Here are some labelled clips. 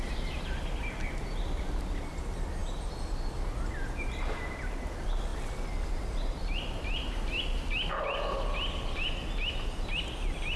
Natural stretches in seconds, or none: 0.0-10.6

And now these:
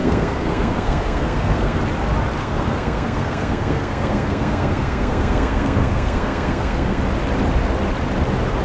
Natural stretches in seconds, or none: 1.8-2.4; 7.0-8.6

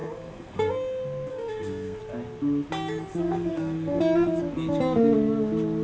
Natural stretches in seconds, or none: 0.7-1.3; 2.0-3.1; 4.0-5.8

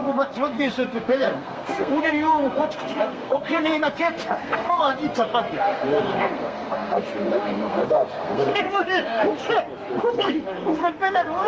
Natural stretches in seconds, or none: 9.4-10.0

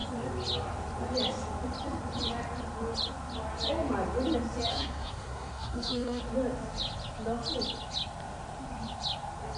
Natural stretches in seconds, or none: 0.0-4.7; 6.2-9.6

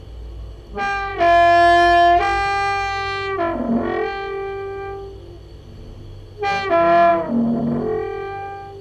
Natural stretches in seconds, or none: 0.0-8.8

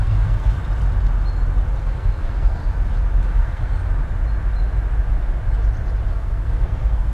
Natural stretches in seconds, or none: 0.6-1.8; 2.6-3.3; 3.8-6.1